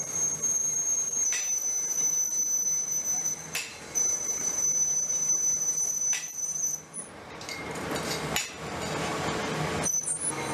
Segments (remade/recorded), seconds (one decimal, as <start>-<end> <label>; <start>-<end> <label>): 0.0-3.7 recorded; 3.7-8.6 remade; 8.6-10.5 recorded